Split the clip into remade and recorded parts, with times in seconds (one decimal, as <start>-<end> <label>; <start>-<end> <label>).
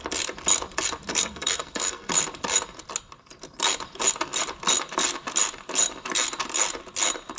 0.0-1.1 recorded; 1.1-2.1 remade; 2.1-7.4 recorded